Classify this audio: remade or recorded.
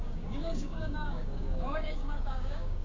remade